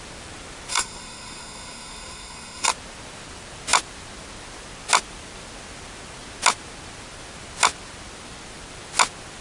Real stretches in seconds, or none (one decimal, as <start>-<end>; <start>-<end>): 0.0-0.7; 2.7-9.4